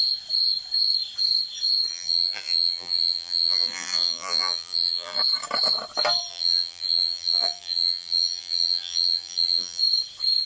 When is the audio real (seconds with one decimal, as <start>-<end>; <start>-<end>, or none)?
0.0-1.9; 5.2-6.3; 9.8-10.5